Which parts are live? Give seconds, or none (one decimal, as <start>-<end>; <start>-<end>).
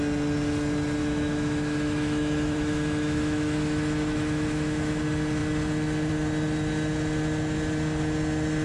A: 0.0-1.0; 5.0-8.6